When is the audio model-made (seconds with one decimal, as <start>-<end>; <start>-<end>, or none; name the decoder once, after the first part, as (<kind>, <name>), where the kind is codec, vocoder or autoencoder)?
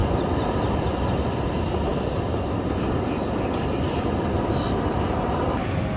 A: none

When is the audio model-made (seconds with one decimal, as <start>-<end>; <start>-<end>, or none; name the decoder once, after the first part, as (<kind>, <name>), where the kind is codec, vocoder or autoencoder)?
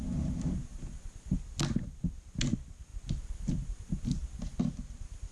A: none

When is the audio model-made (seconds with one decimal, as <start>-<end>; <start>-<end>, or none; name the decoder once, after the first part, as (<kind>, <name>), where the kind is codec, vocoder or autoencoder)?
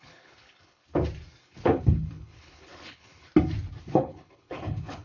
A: 0.0-0.8 (codec, HILCodec); 1.4-3.3; 3.8-5.0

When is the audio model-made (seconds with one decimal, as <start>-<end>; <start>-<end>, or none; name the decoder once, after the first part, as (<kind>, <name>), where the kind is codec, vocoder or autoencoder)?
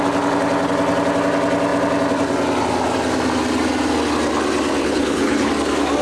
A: 4.8-5.5 (codec, HILCodec)